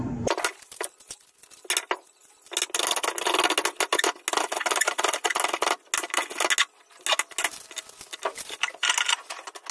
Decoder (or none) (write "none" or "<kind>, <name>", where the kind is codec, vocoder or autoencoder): none